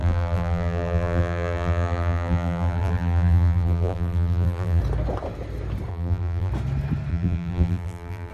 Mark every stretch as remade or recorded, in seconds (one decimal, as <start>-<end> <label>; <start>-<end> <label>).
0.0-4.8 remade; 4.8-5.9 recorded; 5.9-6.5 remade; 6.5-7.1 recorded; 7.1-8.3 remade